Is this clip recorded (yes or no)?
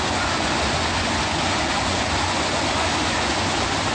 no